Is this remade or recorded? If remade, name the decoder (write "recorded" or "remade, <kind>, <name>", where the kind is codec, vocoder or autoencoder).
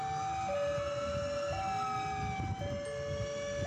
recorded